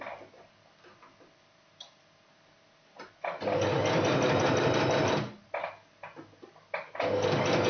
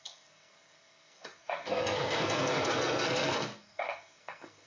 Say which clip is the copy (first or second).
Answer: second